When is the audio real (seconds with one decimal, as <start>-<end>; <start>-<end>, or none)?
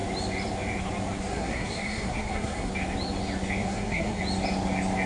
0.0-1.3; 2.7-3.6; 4.2-5.1